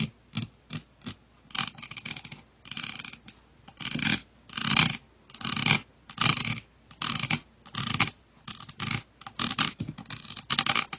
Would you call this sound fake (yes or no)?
no